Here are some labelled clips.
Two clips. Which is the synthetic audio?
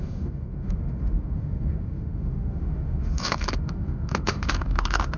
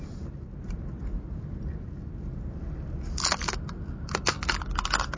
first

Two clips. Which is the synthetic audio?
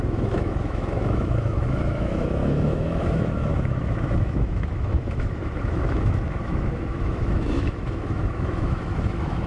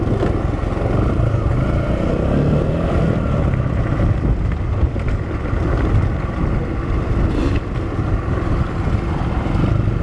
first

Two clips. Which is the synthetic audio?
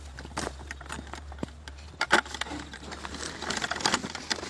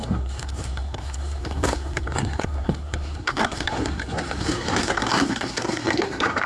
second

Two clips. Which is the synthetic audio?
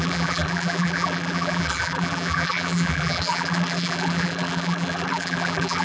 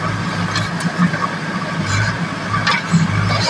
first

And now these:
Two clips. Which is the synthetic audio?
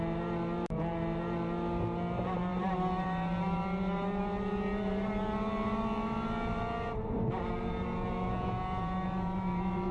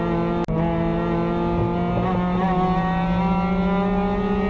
first